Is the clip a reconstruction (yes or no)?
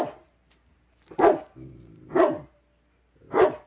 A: no